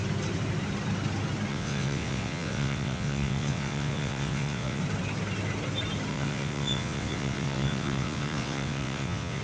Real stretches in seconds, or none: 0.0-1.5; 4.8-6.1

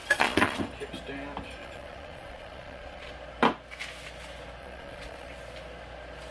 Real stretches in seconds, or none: 0.6-1.6; 3.1-4.6; 5.3-6.3

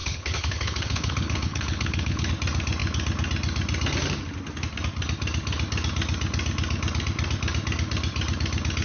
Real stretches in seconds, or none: 2.3-8.8

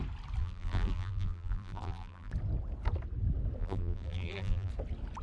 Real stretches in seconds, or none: 0.0-0.4; 2.3-3.6; 4.7-5.2

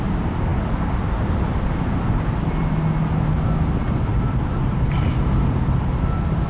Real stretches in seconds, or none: 0.0-4.1; 5.6-6.5

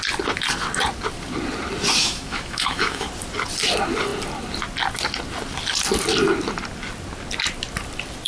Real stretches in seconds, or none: 0.0-2.0; 3.1-8.3

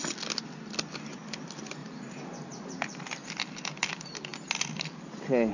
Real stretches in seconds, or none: 0.0-1.8; 3.5-5.5